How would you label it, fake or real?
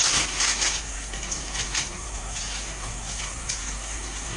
fake